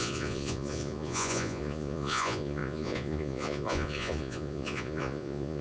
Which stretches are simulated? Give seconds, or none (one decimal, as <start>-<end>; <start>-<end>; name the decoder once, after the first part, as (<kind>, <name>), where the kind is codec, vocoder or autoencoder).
0.0-5.6 (vocoder, Vocos)